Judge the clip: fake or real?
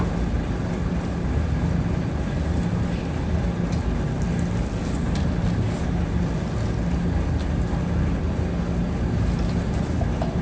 real